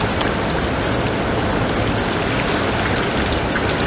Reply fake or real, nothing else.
real